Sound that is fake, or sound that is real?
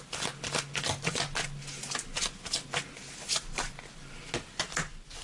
real